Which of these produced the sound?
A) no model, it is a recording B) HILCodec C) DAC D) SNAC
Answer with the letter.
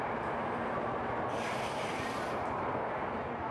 A